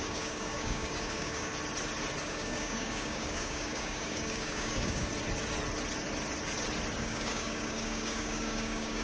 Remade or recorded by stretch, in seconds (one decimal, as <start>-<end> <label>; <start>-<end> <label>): 0.0-1.5 remade; 1.5-2.2 recorded; 2.2-5.1 remade; 5.1-7.0 recorded; 7.0-9.0 remade